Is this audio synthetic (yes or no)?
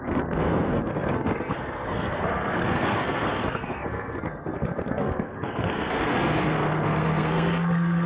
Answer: yes